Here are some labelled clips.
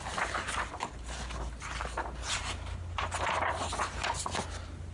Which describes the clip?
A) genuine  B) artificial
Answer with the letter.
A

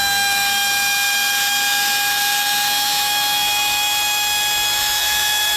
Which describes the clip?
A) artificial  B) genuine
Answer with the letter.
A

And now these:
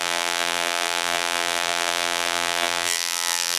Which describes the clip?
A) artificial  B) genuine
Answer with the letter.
A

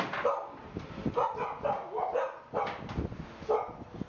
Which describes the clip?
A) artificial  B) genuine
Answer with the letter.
B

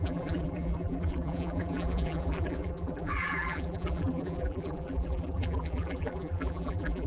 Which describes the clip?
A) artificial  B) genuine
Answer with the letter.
A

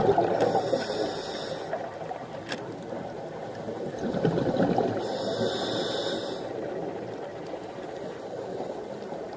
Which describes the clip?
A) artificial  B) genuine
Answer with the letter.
B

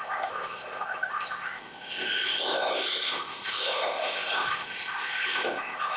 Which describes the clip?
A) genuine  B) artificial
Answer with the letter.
B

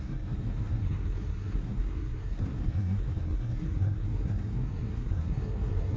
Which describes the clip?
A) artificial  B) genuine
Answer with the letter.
A